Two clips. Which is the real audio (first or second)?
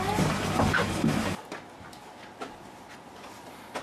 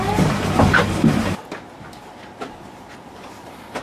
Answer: first